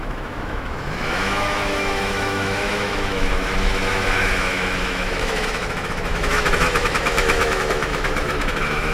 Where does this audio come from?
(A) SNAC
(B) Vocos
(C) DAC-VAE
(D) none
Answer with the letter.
C